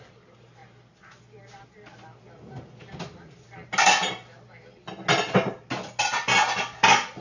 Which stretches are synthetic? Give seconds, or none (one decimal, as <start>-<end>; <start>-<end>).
none